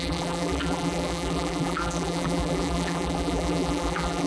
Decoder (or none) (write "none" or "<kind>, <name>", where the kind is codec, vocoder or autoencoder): vocoder, BigVGAN v2